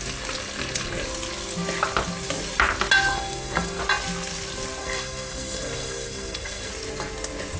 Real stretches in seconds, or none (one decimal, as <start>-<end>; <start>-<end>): 0.0-3.1; 3.8-4.8; 6.7-7.6